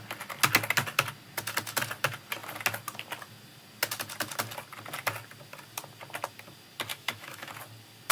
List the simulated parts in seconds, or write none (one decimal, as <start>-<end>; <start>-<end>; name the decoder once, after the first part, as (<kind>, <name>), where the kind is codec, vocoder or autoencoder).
6.9-7.5 (autoencoder, DAC-VAE)

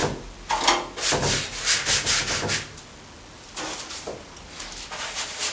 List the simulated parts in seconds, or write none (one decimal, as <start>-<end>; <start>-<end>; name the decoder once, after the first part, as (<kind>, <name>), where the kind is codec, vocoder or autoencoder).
none

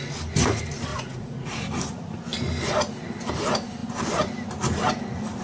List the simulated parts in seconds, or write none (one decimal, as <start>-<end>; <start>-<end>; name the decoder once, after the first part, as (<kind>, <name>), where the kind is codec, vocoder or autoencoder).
0.9-1.6 (vocoder, Vocos)

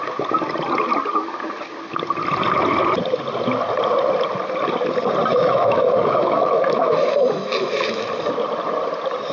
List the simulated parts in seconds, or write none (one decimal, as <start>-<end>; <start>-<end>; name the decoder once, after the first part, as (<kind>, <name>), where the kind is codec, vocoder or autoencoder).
5.3-8.1 (autoencoder, DAC-VAE)